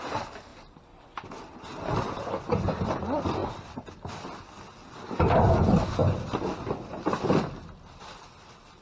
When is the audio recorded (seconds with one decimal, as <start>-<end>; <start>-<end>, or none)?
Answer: 0.0-0.5; 2.4-3.4; 4.2-8.8